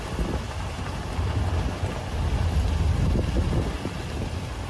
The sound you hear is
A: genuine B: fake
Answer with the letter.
A